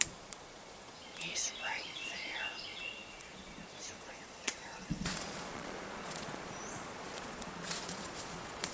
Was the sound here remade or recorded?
remade